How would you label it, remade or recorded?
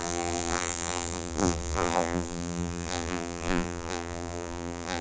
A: remade